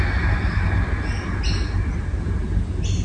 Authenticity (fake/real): real